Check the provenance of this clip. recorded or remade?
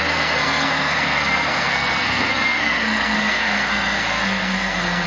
remade